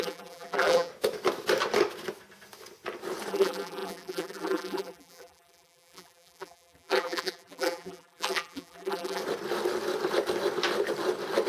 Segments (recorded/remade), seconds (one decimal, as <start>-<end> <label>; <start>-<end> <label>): 0.0-0.9 remade; 0.9-3.3 recorded; 3.3-9.2 remade; 9.2-11.5 recorded